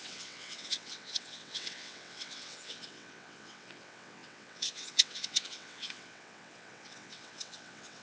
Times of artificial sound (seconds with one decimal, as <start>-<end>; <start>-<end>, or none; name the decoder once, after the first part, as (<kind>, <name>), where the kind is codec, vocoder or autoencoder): 0.0-8.0 (vocoder, WaveNeXt)